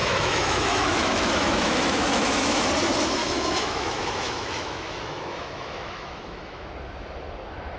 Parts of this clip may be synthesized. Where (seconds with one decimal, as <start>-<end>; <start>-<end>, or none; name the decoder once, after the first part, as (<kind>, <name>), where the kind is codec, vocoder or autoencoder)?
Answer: 0.0-2.7 (autoencoder, DAC-VAE); 3.2-6.7